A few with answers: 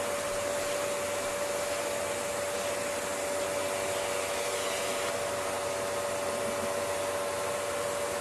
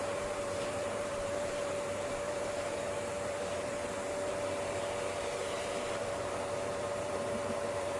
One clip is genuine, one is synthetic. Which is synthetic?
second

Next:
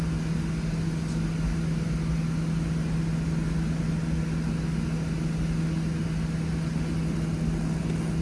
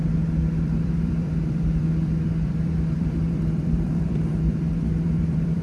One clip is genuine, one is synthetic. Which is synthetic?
second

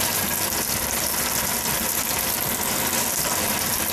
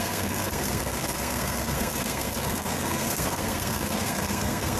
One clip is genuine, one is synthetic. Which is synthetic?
second